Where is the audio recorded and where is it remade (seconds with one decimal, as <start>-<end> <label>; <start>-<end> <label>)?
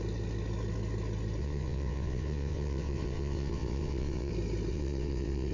0.0-1.4 recorded; 1.4-4.3 remade; 4.3-4.7 recorded; 4.7-5.5 remade